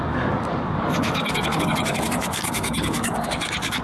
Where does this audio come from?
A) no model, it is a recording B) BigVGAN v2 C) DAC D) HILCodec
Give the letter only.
C